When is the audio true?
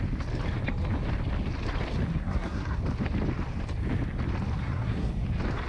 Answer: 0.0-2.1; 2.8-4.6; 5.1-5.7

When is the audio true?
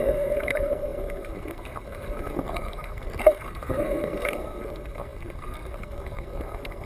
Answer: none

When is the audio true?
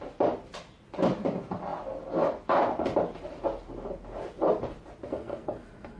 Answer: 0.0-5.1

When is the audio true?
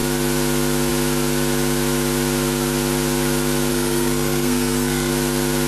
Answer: 0.0-3.7; 5.1-5.7